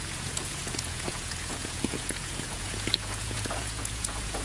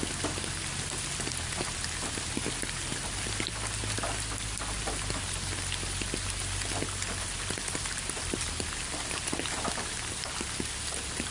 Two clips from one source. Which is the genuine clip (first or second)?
second